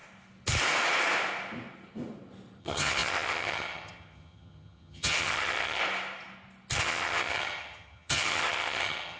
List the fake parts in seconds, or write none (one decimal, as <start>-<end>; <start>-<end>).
2.6-5.8; 6.8-9.2